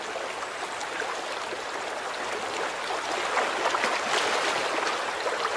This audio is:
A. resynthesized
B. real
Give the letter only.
B